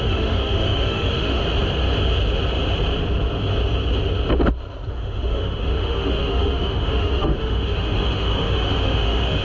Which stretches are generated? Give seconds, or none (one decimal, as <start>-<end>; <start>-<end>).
0.0-1.4; 4.9-9.4